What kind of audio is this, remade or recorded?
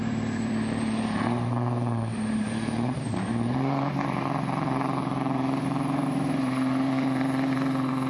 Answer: remade